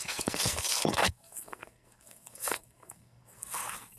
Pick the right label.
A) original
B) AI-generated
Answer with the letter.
B